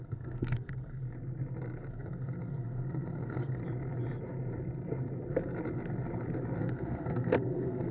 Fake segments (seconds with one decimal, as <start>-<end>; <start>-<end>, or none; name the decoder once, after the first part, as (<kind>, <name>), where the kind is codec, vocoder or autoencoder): 0.0-1.0 (codec, SNAC); 1.9-3.6; 6.6-7.9